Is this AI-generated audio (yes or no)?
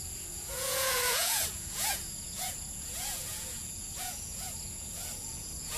yes